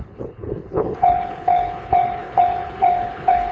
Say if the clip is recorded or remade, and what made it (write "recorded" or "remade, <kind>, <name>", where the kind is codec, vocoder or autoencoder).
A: remade, codec, HILCodec